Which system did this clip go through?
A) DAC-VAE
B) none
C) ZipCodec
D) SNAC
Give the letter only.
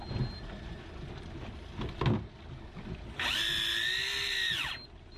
B